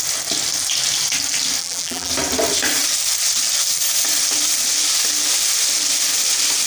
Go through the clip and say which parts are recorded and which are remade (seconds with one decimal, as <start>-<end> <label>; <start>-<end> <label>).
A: 0.0-1.6 recorded; 1.6-2.1 remade; 2.1-6.7 recorded